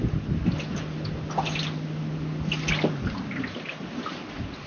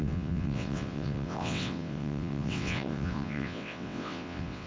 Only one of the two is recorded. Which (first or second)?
first